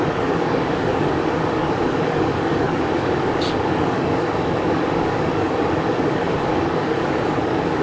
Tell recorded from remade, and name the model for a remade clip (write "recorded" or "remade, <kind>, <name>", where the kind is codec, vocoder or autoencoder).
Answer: remade, codec, DAC